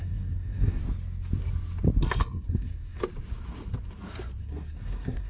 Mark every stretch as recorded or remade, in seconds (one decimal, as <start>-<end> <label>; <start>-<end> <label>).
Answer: 0.0-0.8 remade; 0.8-2.2 recorded; 2.2-3.0 remade; 3.0-4.4 recorded; 4.4-5.3 remade